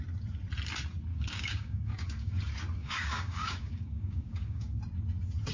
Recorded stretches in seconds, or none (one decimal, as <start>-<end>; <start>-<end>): 0.0-1.1; 2.4-2.8; 4.8-5.5